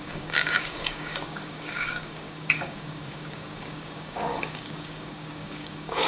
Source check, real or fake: fake